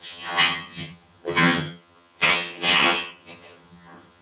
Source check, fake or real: fake